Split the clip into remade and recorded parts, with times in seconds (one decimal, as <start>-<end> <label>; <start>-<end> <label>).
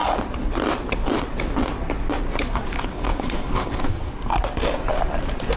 0.0-2.9 recorded; 2.9-4.1 remade; 4.1-5.6 recorded